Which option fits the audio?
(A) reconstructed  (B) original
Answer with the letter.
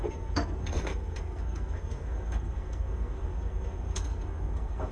A